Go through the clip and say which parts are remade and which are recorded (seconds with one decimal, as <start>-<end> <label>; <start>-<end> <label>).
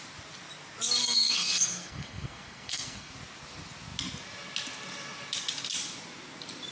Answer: 0.0-1.0 recorded; 1.0-3.1 remade; 3.1-6.7 recorded